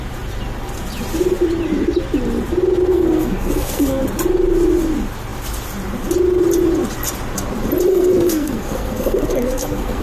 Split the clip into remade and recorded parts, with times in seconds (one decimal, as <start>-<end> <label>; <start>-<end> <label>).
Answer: 0.0-2.9 recorded; 2.9-4.0 remade; 4.0-7.9 recorded; 7.9-10.0 remade